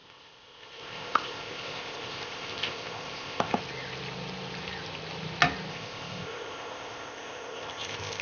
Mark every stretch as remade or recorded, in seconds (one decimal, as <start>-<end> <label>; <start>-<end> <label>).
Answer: 0.0-3.6 remade; 3.6-5.7 recorded; 5.7-8.2 remade